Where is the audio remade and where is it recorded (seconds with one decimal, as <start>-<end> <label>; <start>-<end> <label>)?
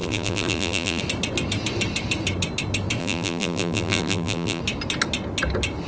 0.0-1.0 remade; 1.0-3.0 recorded; 3.0-4.6 remade; 4.6-5.9 recorded